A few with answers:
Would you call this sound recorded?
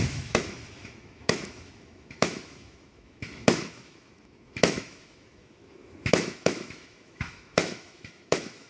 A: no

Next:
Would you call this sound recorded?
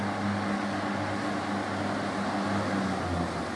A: yes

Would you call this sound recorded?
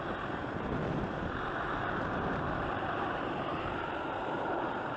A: no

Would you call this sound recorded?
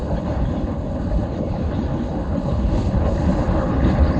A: no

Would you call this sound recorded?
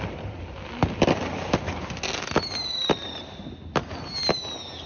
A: yes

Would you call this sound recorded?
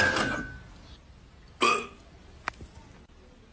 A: yes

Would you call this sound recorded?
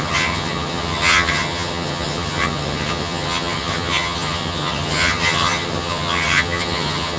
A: no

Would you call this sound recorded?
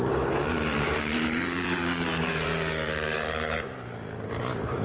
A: no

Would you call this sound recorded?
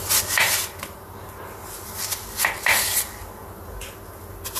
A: yes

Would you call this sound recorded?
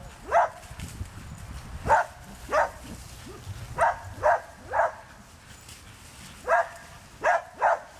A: yes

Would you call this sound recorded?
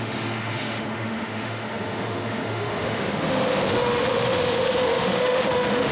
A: no